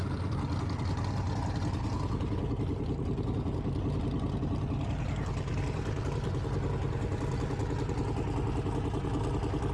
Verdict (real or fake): real